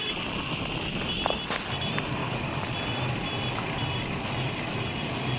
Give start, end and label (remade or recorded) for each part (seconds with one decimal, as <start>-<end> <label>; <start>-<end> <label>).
0.0-2.2 recorded; 2.2-2.7 remade; 2.7-5.4 recorded